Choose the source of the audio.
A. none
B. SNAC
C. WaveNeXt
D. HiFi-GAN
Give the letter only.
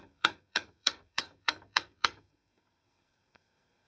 B